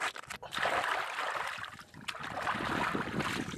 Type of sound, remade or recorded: recorded